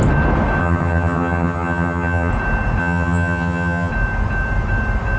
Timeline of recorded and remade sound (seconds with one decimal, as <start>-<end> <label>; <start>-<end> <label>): 0.0-0.6 recorded; 0.6-2.3 remade; 2.3-2.8 recorded; 2.8-3.9 remade; 3.9-5.2 recorded